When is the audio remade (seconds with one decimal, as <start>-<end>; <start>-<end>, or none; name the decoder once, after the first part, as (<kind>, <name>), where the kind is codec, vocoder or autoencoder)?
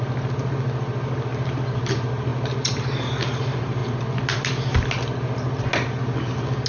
none